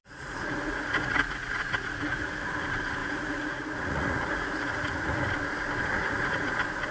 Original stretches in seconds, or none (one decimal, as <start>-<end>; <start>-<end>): 2.4-3.0; 5.2-5.9; 6.5-6.9